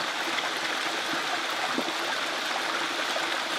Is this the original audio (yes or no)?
yes